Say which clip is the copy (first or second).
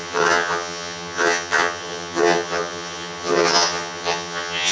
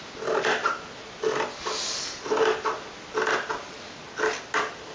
first